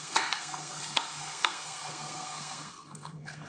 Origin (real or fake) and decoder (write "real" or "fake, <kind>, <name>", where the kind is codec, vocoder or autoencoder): fake, codec, SNAC